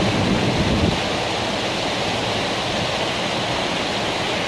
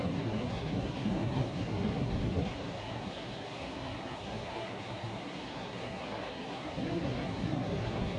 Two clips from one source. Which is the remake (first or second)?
second